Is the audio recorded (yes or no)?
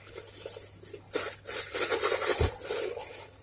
yes